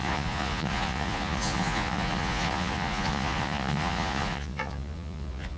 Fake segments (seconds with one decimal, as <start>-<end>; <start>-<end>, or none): 0.0-5.6